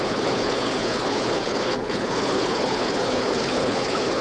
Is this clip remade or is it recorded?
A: remade